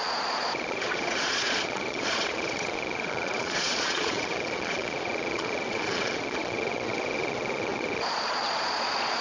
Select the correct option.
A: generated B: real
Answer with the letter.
A